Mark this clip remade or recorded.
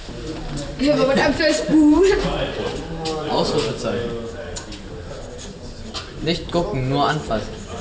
recorded